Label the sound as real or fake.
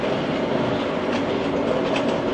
real